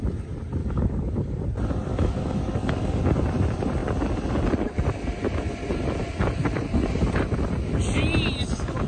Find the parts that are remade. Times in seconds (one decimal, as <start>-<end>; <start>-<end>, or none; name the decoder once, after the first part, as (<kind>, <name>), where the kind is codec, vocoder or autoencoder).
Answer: 0.6-1.4 (codec, DAC); 1.9-3.0